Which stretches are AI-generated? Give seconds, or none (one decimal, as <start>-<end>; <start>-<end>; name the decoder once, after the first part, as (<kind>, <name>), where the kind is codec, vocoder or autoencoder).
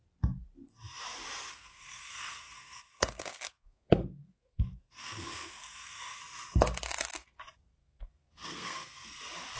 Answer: 1.5-6.2 (codec, SNAC); 7.8-9.2